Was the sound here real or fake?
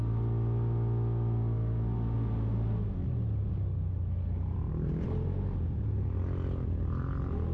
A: real